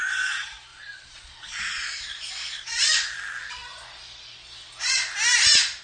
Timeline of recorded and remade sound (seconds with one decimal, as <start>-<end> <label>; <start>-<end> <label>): 0.0-0.7 recorded; 0.7-2.0 remade; 2.0-5.8 recorded